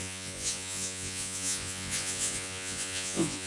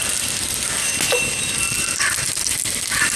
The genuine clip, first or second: second